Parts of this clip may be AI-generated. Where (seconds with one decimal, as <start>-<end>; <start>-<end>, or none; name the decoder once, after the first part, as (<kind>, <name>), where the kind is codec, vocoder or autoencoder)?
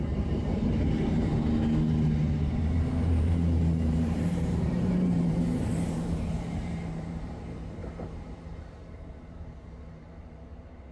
0.0-1.3 (vocoder, BigVGAN v2); 2.7-7.8; 8.8-10.9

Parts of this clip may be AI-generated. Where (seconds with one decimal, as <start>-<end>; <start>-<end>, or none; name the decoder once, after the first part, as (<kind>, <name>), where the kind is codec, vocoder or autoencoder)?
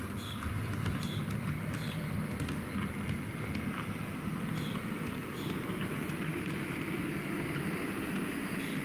5.3-8.1 (vocoder, BigVGAN v2)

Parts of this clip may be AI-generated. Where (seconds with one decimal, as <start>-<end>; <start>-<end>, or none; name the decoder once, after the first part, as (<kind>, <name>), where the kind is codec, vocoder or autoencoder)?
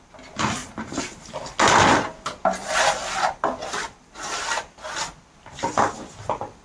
0.6-1.3 (vocoder, BigVGAN v2)